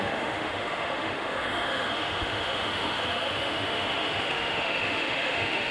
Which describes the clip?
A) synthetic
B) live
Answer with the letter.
A